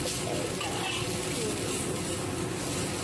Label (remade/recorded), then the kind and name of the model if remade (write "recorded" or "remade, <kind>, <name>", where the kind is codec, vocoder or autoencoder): recorded